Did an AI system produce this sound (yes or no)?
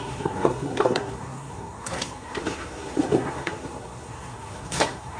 yes